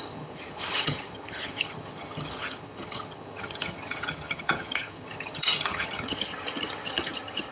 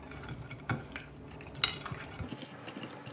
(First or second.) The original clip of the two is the second